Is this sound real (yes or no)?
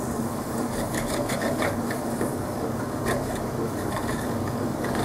no